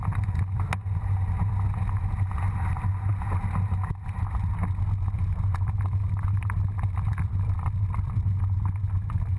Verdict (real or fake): real